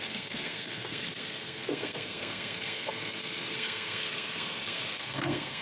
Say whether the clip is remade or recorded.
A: remade